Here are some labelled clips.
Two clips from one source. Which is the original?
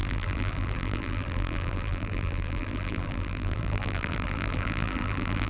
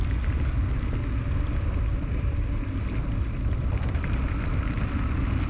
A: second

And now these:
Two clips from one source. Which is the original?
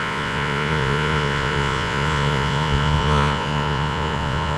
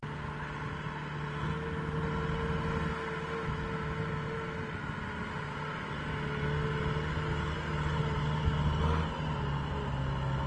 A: second